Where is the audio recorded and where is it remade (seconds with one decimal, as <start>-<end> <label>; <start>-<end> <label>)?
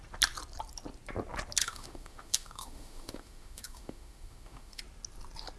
0.0-1.6 recorded; 1.6-4.8 remade; 4.8-5.6 recorded